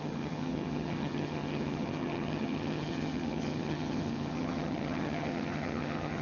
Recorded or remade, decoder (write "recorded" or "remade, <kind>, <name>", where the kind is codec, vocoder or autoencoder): remade, vocoder, HiFi-GAN